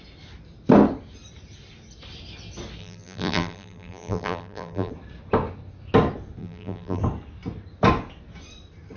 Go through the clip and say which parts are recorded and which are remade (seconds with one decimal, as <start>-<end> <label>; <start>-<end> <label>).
0.0-2.8 recorded; 2.8-4.9 remade; 4.9-6.4 recorded; 6.4-7.0 remade; 7.0-9.0 recorded